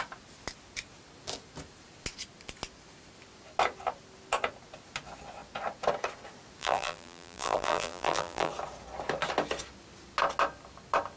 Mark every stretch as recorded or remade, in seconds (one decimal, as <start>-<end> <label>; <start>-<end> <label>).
0.0-6.6 recorded; 6.6-8.5 remade; 8.5-11.2 recorded